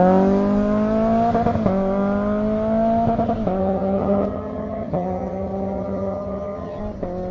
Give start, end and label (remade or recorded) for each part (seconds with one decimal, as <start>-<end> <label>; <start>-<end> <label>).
0.0-3.6 recorded; 3.6-6.8 remade; 6.8-7.3 recorded